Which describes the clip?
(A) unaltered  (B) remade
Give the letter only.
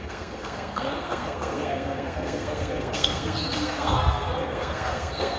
B